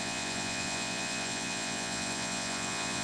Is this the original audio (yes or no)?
no